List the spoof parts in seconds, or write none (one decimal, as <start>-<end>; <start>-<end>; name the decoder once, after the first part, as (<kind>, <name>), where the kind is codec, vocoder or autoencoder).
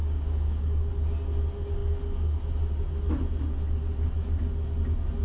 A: 0.0-0.9 (codec, DAC)